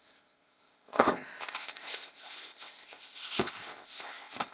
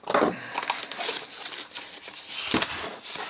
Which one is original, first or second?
second